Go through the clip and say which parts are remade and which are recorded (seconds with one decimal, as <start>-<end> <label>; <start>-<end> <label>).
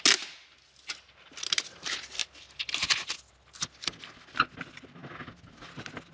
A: 0.0-6.1 recorded